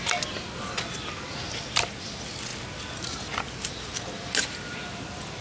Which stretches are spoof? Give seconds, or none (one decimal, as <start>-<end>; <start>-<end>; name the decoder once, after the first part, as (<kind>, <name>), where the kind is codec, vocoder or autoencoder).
none